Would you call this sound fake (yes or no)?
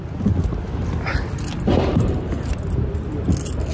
no